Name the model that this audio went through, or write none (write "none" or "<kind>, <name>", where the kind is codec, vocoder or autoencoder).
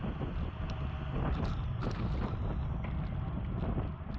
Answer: none